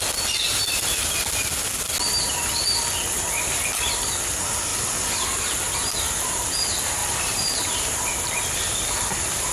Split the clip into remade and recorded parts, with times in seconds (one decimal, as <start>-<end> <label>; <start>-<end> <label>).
0.0-0.5 recorded; 0.5-1.5 remade; 1.5-7.0 recorded; 7.0-8.4 remade; 8.4-9.5 recorded